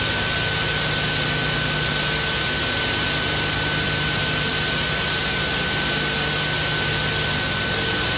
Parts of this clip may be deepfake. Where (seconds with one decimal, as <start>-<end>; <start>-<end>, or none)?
none